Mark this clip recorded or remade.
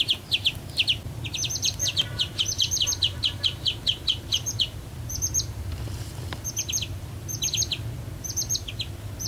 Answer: remade